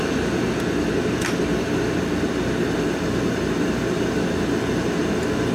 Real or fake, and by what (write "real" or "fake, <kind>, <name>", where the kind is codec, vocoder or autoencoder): real